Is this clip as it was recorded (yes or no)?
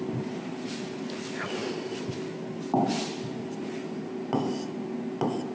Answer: yes